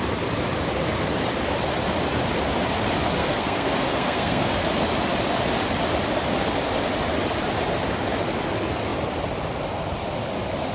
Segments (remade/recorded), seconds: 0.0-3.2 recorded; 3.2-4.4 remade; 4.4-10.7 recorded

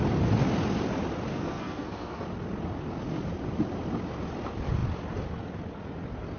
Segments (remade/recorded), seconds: 0.0-1.3 recorded; 1.3-2.2 remade; 2.2-6.4 recorded

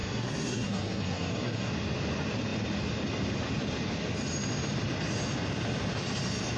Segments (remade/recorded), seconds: 0.0-1.7 remade; 1.7-6.6 recorded